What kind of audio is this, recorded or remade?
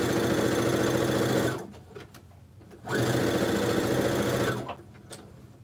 recorded